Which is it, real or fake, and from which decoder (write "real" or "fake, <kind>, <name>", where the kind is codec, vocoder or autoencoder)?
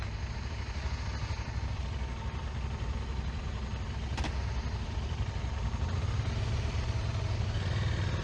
real